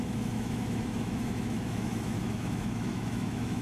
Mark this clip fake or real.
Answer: fake